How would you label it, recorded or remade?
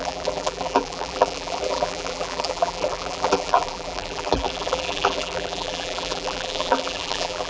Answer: remade